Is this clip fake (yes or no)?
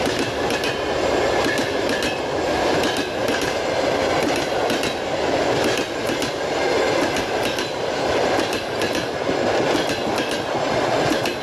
no